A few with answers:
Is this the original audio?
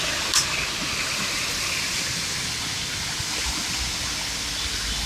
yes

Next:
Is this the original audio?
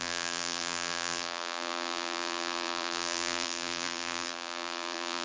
no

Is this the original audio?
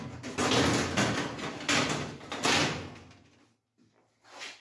yes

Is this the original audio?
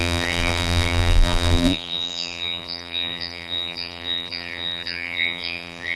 no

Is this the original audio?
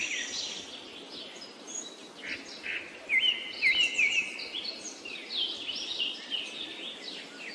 yes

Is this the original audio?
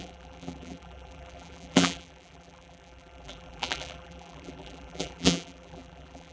no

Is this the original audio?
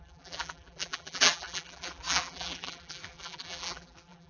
no